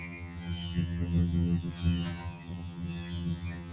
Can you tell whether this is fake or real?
fake